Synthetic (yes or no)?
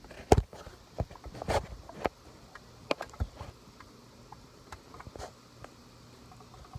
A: no